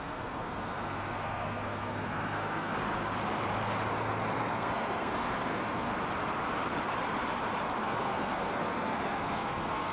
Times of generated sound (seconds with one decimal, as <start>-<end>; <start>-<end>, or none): 0.0-2.7; 4.4-5.9; 7.8-9.9